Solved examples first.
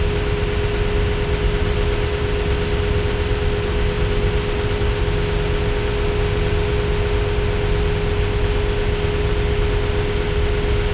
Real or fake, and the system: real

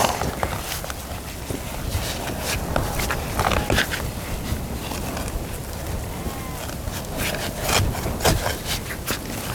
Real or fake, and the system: real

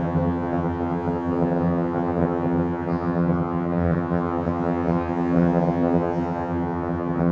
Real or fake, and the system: fake, vocoder, HiFi-GAN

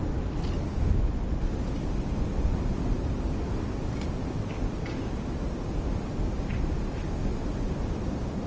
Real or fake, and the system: real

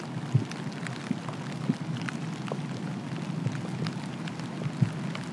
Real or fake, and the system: real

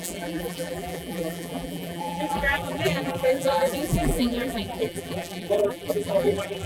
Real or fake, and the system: fake, vocoder, BigVGAN v2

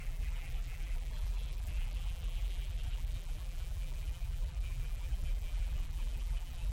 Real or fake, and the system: fake, vocoder, BigVGAN v2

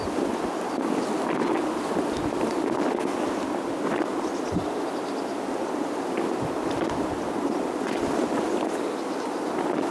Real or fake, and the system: real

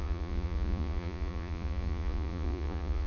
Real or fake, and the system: fake, vocoder, Vocos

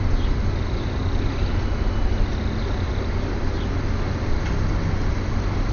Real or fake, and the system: real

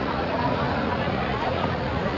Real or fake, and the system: fake, vocoder, Vocos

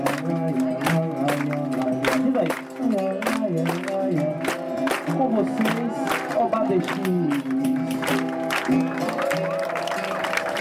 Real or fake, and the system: real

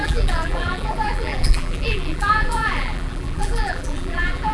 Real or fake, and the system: fake, vocoder, BigVGAN v2